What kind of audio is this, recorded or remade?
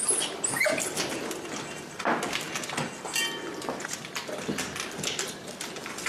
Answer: recorded